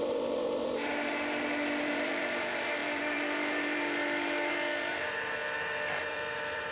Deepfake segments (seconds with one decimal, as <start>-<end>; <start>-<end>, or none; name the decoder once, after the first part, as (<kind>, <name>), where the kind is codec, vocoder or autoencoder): 0.0-5.4 (vocoder, BigVGAN v2); 6.0-6.7